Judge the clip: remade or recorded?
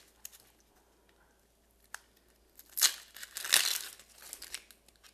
recorded